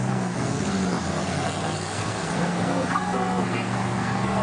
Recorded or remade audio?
remade